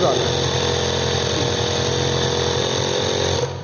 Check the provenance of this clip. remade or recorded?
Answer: recorded